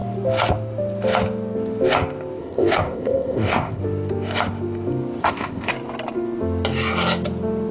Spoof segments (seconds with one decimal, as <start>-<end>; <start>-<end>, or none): 2.4-3.8; 5.2-5.7